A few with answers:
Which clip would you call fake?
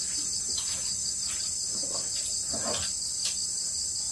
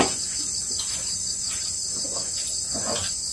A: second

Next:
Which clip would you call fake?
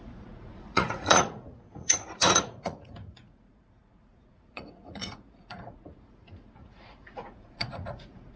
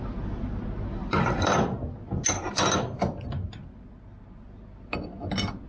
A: first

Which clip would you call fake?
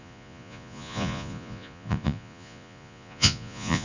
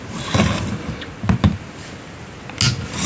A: first